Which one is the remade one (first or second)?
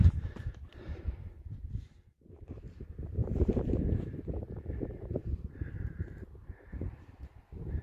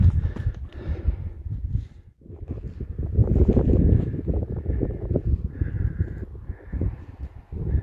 first